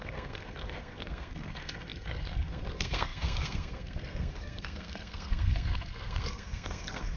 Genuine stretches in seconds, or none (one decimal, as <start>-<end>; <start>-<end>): none